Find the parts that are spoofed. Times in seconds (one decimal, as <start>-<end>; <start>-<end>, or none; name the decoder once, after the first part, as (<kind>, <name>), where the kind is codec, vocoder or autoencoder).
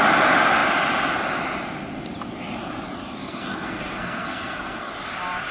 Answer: 3.2-4.9 (codec, SNAC)